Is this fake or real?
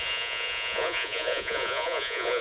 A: fake